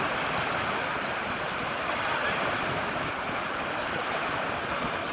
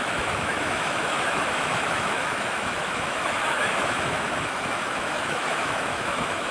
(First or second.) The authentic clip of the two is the first